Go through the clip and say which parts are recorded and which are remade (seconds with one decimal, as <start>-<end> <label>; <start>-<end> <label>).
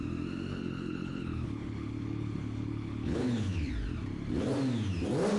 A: 0.0-0.5 recorded; 0.5-3.7 remade; 3.7-5.4 recorded